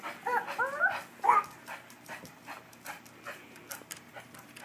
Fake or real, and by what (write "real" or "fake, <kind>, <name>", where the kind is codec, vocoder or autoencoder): real